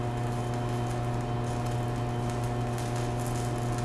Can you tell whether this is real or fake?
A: real